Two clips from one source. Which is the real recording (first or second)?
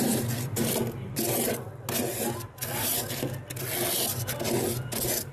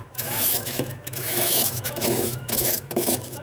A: first